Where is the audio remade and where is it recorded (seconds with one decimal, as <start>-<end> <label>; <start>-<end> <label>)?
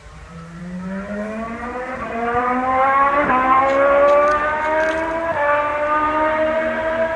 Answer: 0.0-3.6 remade; 3.6-5.7 recorded; 5.7-7.2 remade